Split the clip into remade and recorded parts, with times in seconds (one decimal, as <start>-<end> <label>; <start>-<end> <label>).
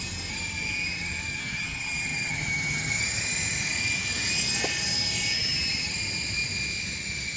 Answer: 0.0-1.3 recorded; 1.3-2.9 remade; 2.9-7.4 recorded